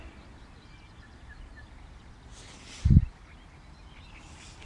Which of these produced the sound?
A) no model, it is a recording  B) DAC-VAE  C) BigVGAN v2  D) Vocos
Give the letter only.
A